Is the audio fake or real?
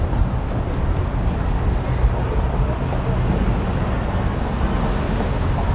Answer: real